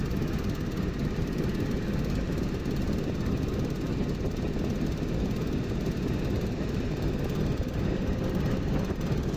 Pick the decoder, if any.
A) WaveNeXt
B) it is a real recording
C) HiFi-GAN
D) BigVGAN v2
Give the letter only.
B